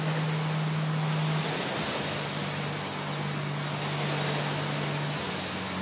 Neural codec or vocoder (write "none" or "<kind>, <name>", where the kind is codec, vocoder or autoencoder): none